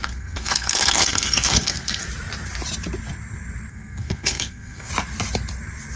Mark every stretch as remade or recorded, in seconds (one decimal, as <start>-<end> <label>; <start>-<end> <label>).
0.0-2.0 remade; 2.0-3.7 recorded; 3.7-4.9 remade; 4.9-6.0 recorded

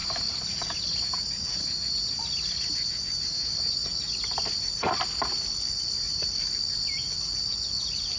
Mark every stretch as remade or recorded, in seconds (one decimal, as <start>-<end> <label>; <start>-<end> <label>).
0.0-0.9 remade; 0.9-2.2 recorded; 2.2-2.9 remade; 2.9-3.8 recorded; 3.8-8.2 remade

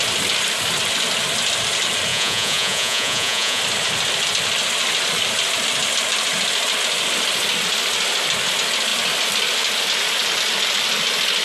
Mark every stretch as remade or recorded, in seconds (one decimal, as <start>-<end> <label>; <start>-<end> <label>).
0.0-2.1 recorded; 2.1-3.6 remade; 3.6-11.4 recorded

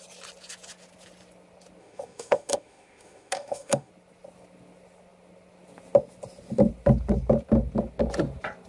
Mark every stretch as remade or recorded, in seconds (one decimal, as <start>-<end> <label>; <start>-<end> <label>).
0.0-1.8 recorded; 1.8-3.9 remade; 3.9-8.7 recorded

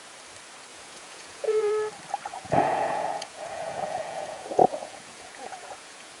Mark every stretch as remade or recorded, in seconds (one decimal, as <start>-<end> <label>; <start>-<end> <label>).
0.0-0.7 recorded; 0.7-1.7 remade; 1.7-2.3 recorded; 2.3-6.2 remade

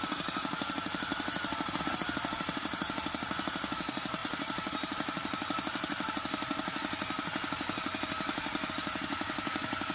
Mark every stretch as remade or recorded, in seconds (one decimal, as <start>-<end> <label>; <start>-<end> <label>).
0.0-9.9 recorded

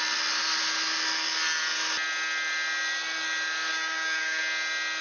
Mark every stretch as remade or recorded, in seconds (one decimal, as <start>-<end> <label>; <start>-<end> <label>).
0.0-3.7 recorded; 3.7-4.4 remade; 4.4-5.0 recorded